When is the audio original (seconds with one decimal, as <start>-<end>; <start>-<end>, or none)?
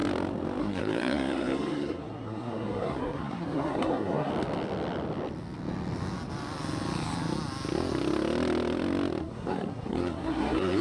0.0-0.6; 4.3-9.2